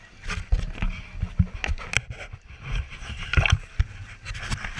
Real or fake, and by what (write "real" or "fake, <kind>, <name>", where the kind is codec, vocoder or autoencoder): real